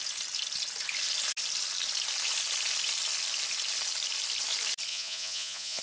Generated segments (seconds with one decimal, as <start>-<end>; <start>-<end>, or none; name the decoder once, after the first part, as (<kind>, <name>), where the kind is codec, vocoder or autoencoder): 4.9-5.8 (vocoder, Vocos)